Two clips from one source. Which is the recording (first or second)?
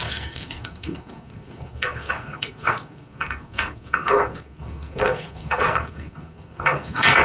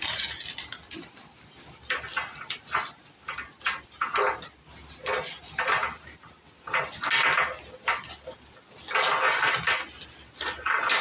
second